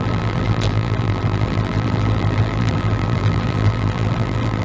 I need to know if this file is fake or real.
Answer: fake